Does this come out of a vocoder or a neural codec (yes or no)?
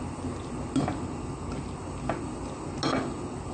no